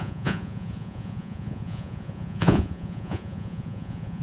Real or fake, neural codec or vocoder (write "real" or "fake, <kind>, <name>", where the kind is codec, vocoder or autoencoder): fake, vocoder, Vocos